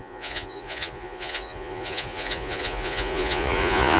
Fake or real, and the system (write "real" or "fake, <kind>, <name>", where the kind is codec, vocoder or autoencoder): fake, vocoder, Vocos